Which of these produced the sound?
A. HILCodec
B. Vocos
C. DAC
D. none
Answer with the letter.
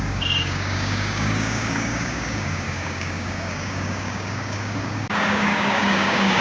C